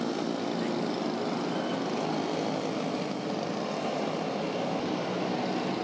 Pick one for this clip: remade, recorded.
recorded